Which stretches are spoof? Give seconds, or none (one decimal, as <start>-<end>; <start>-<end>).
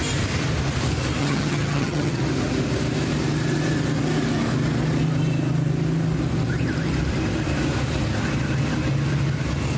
1.2-2.2